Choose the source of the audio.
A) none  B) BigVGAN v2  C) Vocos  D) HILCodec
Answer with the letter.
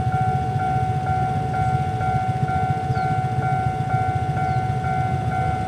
A